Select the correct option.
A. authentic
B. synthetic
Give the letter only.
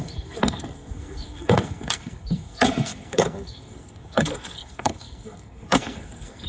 B